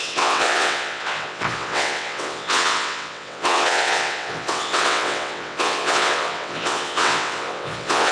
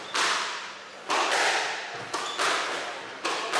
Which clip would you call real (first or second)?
second